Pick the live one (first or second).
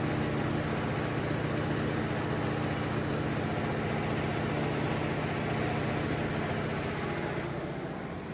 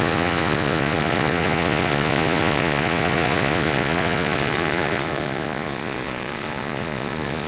first